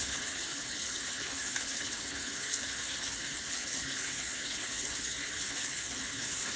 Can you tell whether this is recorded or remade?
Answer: remade